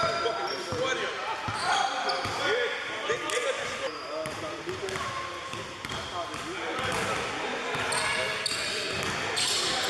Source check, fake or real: real